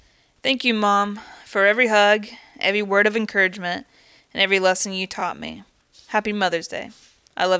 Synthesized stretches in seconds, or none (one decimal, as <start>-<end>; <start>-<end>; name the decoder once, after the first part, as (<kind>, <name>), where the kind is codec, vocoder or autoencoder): 5.2-5.8 (vocoder, Vocos)